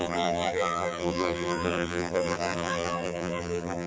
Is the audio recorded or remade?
remade